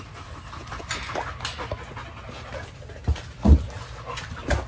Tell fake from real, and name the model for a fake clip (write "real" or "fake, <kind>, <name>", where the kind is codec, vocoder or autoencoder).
real